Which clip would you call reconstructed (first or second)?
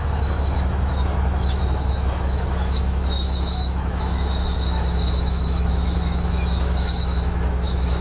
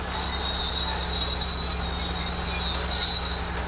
first